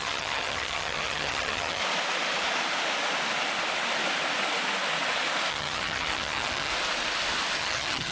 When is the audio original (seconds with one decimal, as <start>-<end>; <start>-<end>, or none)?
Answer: 1.8-5.5; 6.7-7.6